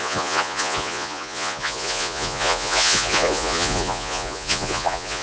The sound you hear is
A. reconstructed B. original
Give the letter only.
A